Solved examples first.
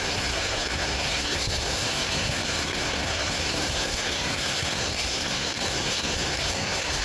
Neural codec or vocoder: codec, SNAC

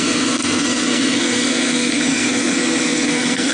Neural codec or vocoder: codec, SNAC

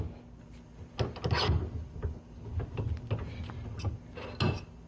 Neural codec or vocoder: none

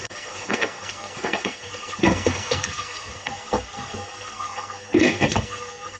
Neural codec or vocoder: codec, SNAC